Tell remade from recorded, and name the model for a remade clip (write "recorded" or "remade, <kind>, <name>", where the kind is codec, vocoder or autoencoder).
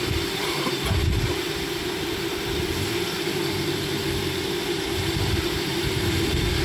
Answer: remade, vocoder, BigVGAN v2